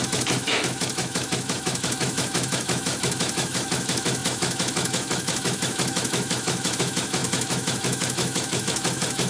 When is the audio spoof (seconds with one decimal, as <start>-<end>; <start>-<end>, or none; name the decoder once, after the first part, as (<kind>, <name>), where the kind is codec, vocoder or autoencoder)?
0.0-9.3 (autoencoder, DAC-VAE)